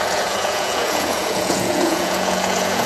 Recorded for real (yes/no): no